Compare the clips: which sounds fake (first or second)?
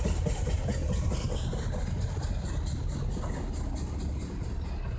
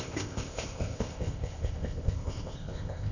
second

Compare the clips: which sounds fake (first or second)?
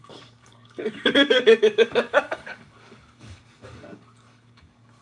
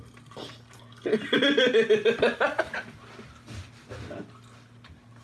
first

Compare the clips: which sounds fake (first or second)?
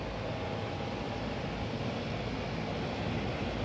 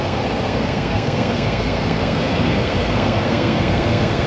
second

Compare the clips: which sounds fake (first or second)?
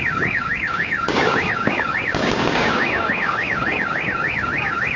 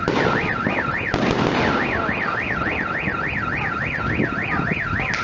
first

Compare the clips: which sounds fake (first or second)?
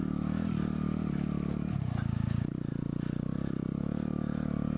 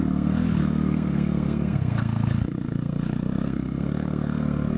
second